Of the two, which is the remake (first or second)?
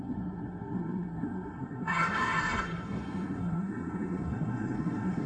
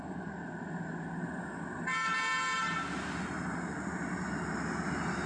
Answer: first